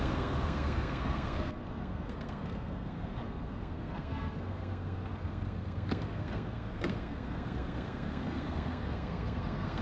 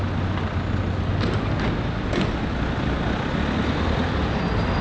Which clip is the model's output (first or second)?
first